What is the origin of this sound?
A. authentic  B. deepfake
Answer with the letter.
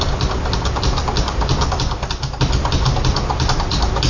A